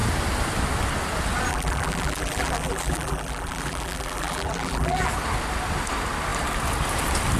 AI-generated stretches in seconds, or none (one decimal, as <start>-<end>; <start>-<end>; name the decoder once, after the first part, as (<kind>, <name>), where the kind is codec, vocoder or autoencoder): 1.5-5.1 (vocoder, BigVGAN v2)